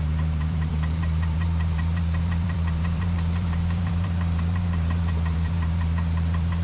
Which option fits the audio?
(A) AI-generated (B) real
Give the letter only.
A